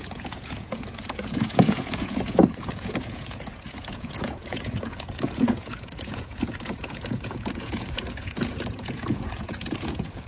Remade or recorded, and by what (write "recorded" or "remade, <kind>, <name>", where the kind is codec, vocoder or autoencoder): remade, vocoder, Vocos